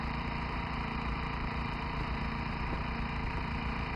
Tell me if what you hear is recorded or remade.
remade